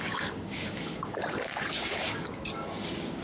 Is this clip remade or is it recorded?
remade